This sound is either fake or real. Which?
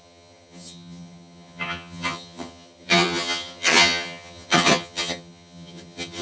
fake